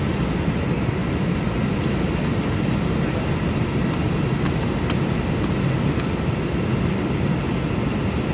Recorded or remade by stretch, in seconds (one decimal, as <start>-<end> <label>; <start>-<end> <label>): 0.0-8.3 recorded